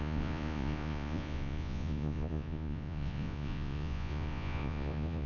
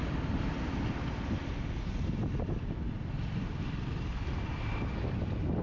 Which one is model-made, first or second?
first